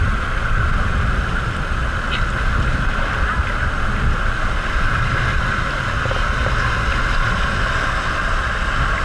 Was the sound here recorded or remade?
recorded